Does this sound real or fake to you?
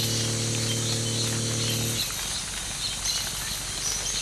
real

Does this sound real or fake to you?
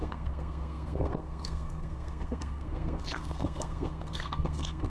fake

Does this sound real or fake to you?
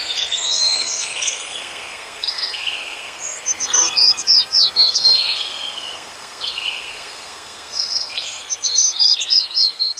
fake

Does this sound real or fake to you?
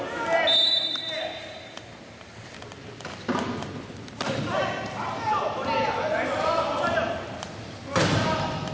real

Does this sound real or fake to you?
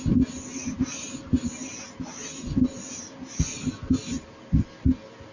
real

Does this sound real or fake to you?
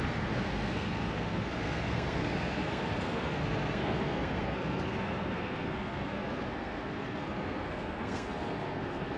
fake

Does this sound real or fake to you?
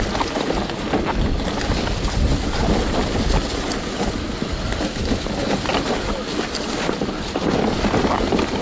real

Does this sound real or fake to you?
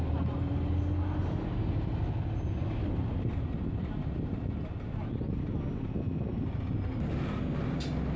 real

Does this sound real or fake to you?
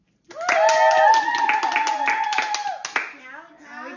real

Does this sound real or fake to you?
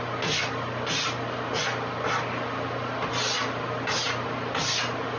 real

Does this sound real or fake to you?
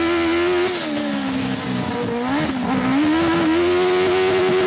real